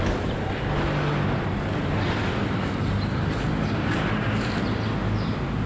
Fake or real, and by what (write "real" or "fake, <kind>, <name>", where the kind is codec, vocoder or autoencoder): real